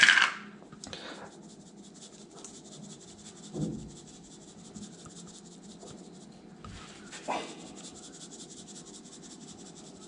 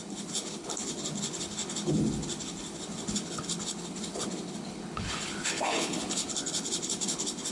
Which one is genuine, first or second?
first